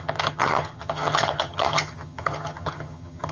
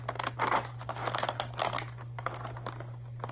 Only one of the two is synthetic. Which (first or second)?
first